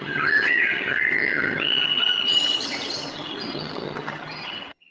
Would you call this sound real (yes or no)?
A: no